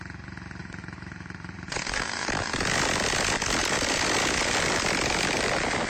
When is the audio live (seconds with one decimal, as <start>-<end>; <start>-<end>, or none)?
0.0-0.6; 2.4-3.6; 4.5-5.9